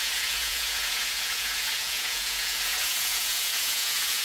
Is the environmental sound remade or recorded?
remade